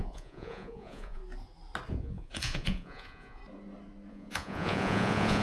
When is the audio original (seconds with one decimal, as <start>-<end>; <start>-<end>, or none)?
1.2-1.9; 3.4-4.1